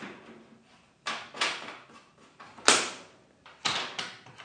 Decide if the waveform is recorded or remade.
recorded